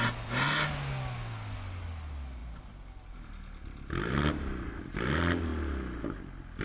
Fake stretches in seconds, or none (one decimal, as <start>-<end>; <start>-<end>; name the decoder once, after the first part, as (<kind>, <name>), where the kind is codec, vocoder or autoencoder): none